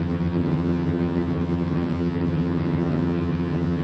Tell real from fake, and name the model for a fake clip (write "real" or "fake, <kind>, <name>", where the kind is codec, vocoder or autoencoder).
fake, vocoder, HiFi-GAN